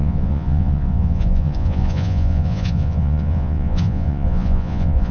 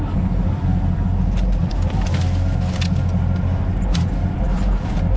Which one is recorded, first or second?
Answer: second